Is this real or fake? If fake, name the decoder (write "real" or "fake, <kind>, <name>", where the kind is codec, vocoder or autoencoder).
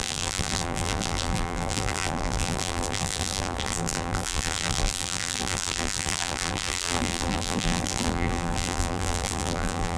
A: fake, vocoder, BigVGAN v2